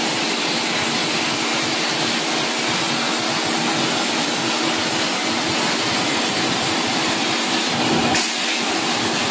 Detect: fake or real real